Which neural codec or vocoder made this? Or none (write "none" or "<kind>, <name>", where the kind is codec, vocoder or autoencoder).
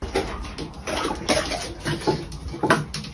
none